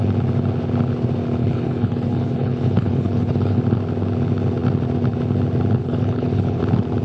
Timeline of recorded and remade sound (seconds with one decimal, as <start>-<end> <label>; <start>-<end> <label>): 0.0-1.4 recorded; 1.4-3.6 remade; 3.6-5.8 recorded; 5.8-6.6 remade; 6.6-7.0 recorded